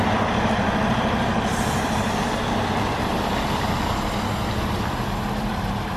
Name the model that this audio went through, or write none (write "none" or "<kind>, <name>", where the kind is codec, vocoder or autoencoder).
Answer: vocoder, BigVGAN v2